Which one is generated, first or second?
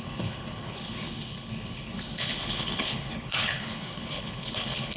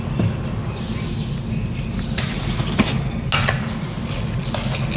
first